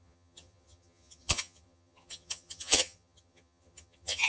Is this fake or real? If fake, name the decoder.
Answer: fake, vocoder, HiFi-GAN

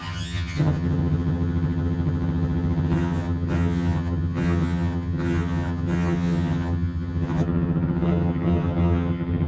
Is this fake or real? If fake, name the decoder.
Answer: fake, vocoder, HiFi-GAN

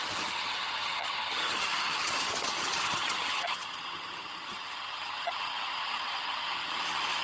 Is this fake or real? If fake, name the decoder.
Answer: fake, vocoder, HiFi-GAN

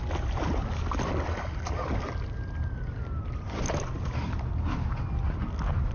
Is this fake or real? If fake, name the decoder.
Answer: real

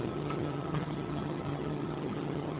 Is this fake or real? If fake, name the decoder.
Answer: fake, vocoder, HiFi-GAN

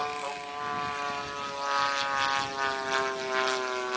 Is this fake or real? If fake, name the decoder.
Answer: real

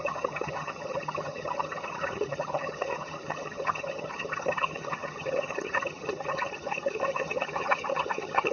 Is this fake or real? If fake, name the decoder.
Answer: fake, vocoder, HiFi-GAN